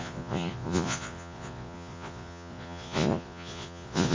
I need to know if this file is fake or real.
fake